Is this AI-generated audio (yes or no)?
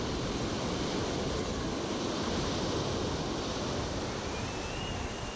no